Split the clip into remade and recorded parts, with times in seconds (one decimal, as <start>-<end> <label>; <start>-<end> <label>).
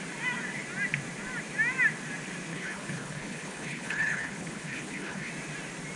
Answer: 0.0-2.5 recorded; 2.5-5.3 remade; 5.3-6.0 recorded